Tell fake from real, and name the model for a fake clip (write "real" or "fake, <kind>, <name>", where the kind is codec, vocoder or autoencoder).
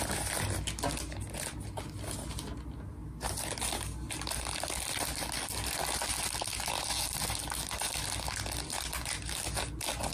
real